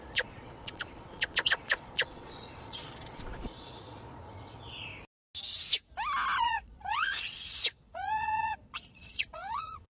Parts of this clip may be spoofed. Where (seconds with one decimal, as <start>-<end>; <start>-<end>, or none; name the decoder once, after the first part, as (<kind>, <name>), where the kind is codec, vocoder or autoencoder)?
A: 0.0-4.9 (vocoder, Vocos); 6.4-9.9